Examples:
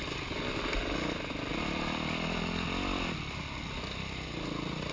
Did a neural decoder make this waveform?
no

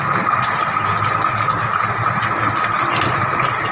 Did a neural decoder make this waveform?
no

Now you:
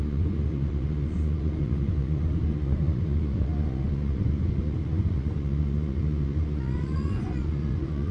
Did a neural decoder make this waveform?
yes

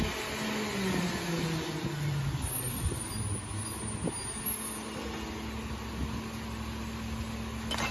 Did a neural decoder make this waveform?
no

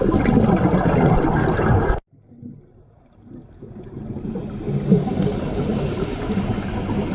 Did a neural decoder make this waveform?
no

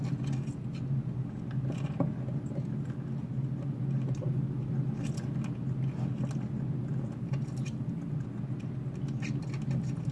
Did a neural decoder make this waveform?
no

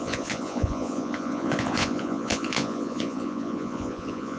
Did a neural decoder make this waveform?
yes